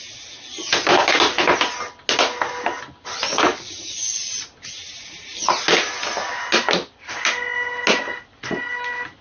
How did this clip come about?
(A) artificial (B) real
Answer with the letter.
B